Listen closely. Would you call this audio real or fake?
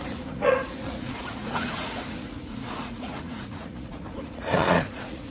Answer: fake